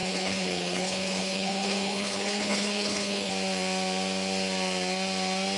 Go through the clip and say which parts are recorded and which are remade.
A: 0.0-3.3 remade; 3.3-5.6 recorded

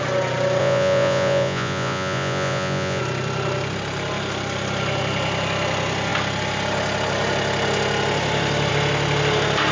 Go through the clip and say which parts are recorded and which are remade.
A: 0.0-0.6 recorded; 0.6-3.0 remade; 3.0-9.7 recorded

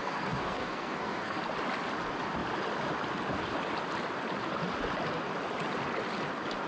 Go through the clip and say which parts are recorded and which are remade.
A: 0.0-1.4 remade; 1.4-6.7 recorded

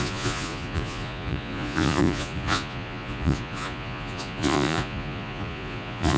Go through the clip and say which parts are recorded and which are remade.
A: 0.0-6.2 remade